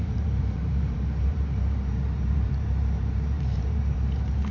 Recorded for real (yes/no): no